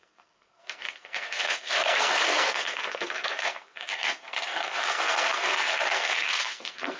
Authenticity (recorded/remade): remade